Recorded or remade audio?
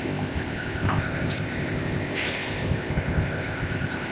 remade